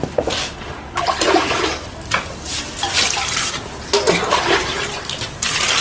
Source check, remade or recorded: recorded